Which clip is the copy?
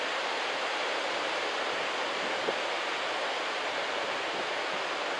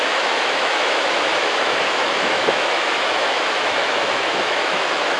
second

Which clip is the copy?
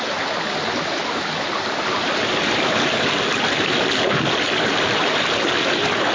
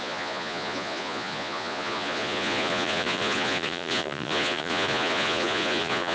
second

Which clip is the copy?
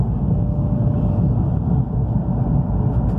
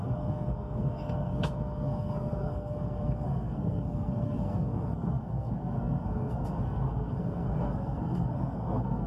second